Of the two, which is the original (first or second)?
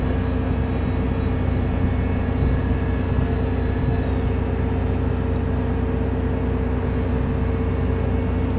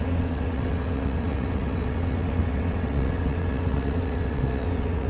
first